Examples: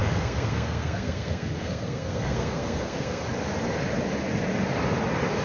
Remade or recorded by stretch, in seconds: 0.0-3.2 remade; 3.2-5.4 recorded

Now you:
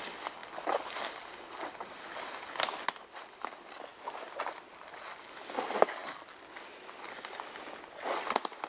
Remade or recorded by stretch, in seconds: 0.0-8.7 recorded

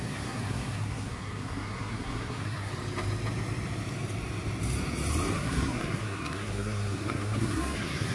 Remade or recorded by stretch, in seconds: 0.0-2.7 remade; 2.7-5.3 recorded; 5.3-8.1 remade